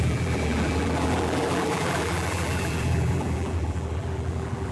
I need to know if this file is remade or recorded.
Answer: remade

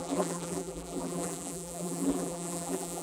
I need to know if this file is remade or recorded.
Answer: remade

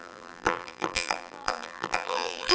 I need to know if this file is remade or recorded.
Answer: remade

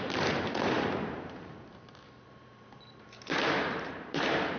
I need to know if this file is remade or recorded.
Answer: remade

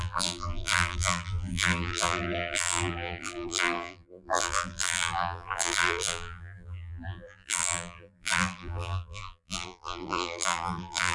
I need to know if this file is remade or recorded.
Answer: remade